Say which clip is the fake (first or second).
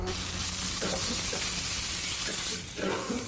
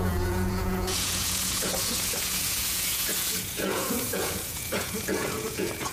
second